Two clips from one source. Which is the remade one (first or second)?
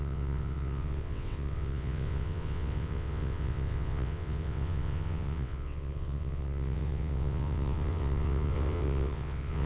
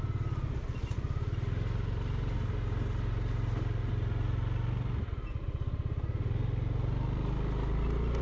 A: first